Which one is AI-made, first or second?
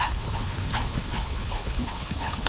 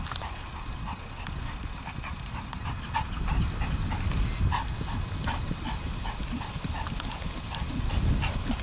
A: first